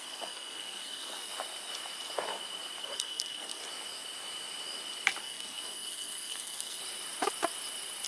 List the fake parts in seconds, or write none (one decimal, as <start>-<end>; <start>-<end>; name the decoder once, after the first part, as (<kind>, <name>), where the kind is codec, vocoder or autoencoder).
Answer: 0.0-1.3 (codec, SNAC); 2.8-3.6; 5.2-6.8